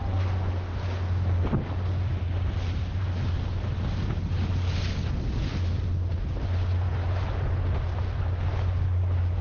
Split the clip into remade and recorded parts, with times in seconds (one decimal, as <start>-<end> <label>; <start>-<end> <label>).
0.0-9.4 recorded